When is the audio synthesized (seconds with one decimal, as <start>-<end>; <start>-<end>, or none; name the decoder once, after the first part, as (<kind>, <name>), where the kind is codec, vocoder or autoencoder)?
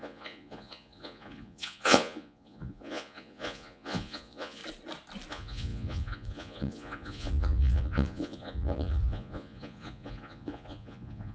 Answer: 0.0-4.6 (vocoder, Vocos); 5.3-11.3